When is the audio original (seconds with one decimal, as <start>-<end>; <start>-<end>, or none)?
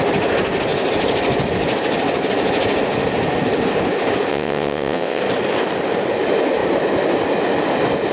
0.0-4.3; 5.2-8.1